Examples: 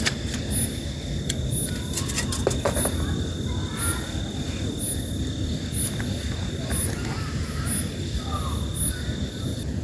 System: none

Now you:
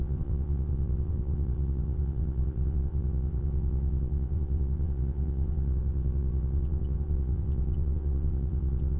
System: vocoder, WaveNeXt